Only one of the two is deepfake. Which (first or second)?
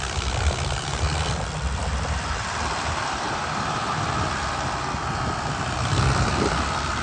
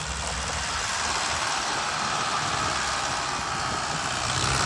first